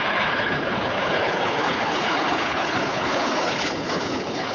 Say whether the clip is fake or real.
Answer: fake